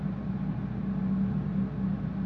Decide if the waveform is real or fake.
real